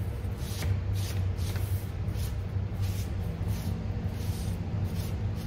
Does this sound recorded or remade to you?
recorded